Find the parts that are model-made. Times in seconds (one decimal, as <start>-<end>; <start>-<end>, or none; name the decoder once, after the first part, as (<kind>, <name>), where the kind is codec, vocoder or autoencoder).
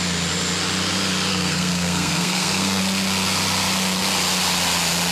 1.3-2.8 (codec, SNAC)